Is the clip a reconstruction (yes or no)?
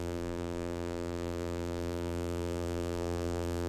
yes